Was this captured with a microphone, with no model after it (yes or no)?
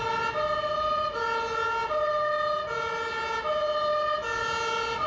yes